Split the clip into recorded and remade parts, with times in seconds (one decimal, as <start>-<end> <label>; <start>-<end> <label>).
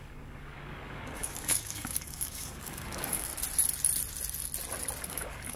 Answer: 0.0-3.3 remade; 3.3-5.1 recorded; 5.1-5.6 remade